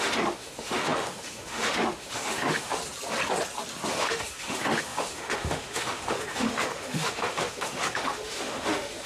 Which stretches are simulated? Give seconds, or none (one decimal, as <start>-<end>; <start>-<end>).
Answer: 0.0-2.8; 3.9-9.1